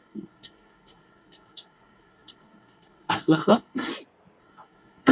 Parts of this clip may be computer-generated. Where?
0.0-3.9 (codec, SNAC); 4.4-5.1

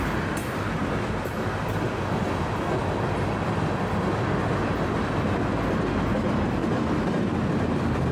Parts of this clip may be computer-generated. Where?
none

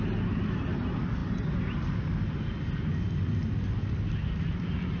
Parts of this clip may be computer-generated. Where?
none

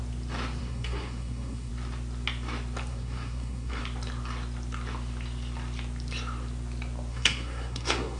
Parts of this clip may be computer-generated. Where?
0.6-1.7 (codec, SNAC); 2.9-3.8; 7.1-8.2

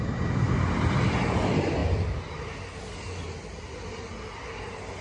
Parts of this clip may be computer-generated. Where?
none